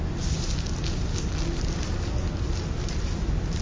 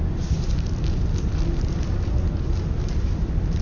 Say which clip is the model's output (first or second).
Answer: second